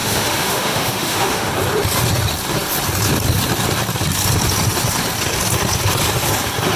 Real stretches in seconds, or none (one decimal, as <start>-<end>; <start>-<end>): 1.5-6.8